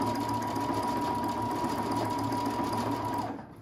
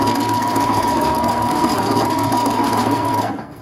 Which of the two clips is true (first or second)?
first